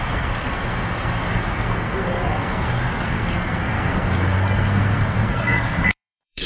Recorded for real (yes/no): no